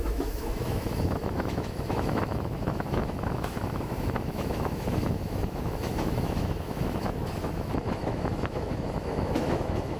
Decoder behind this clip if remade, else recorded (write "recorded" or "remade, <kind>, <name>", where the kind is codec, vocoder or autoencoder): remade, autoencoder, DAC-VAE